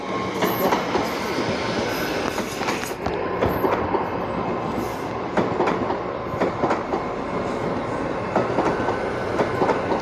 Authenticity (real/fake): real